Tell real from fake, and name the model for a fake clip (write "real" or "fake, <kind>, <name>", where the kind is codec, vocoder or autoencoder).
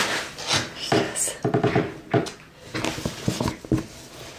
real